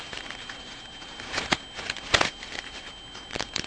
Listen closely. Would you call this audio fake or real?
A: fake